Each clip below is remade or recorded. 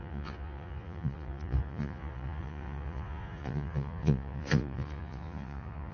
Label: remade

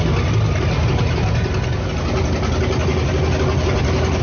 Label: recorded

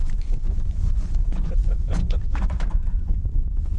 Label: remade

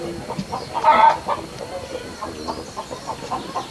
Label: recorded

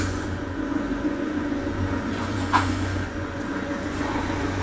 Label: remade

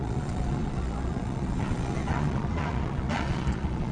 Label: remade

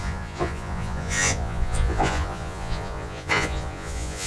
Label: remade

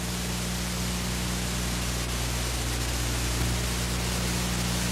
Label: recorded